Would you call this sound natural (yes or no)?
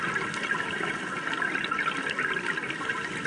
yes